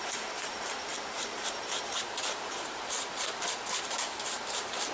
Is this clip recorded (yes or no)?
no